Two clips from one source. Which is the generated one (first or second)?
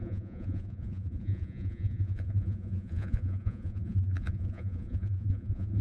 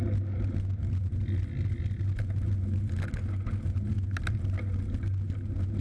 first